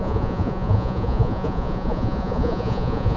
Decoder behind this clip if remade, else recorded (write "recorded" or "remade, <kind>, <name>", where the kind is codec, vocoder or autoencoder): remade, vocoder, Vocos